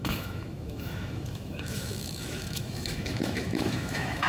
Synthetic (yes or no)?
yes